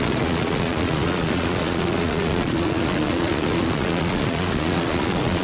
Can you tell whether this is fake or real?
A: fake